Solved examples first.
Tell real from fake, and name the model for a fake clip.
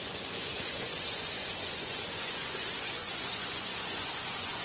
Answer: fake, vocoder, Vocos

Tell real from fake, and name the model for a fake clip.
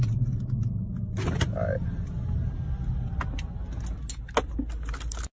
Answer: real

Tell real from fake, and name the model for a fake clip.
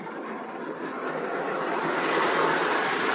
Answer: real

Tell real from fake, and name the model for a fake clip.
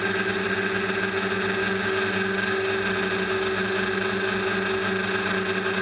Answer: real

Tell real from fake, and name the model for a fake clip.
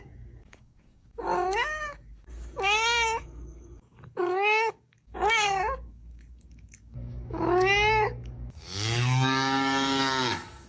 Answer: fake, codec, DAC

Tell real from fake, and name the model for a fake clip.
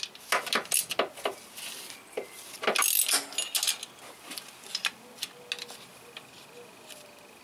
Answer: real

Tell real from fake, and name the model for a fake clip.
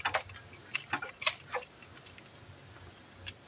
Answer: real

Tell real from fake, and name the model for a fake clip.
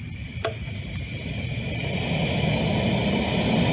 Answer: real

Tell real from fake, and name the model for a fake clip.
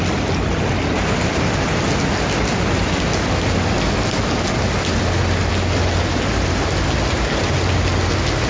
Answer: real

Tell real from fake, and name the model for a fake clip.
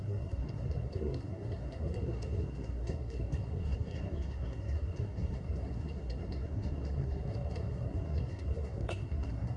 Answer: fake, codec, SNAC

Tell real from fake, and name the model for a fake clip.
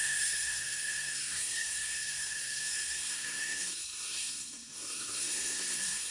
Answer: fake, codec, SNAC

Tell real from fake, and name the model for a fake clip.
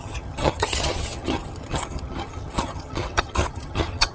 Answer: fake, vocoder, HiFi-GAN